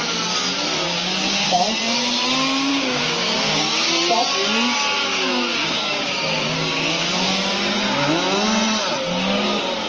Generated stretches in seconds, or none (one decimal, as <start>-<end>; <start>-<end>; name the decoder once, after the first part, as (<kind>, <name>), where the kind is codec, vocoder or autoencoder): 0.9-1.6 (codec, DAC); 2.7-3.9; 5.0-7.1